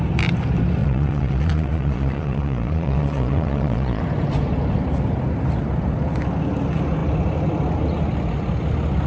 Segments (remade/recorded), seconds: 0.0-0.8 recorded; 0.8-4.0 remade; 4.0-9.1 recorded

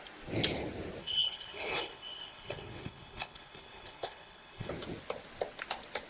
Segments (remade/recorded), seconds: 0.0-1.0 recorded; 1.0-4.7 remade; 4.7-6.1 recorded

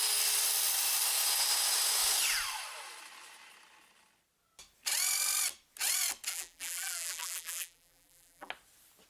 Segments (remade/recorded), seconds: 0.0-6.3 recorded; 6.3-8.5 remade; 8.5-9.1 recorded

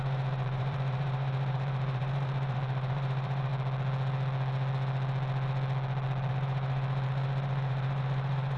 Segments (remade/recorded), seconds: 0.0-3.5 remade; 3.5-6.3 recorded; 6.3-8.6 remade

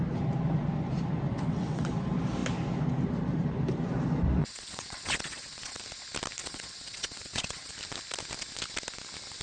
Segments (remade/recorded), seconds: 0.0-1.3 recorded; 1.3-1.9 remade; 1.9-4.4 recorded; 4.4-5.8 remade; 5.8-6.4 recorded; 6.4-7.7 remade; 7.7-9.4 recorded